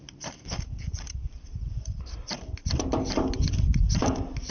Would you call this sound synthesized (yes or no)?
no